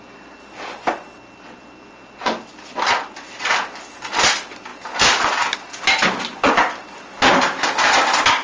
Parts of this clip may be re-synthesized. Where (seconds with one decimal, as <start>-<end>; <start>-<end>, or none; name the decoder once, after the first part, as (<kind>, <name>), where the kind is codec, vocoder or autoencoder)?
none